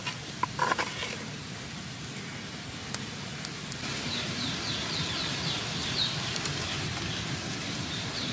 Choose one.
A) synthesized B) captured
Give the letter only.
B